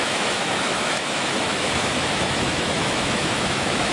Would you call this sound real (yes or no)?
no